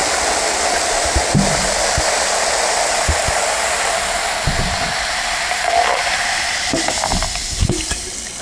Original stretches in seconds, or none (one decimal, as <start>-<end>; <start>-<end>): 0.0-8.4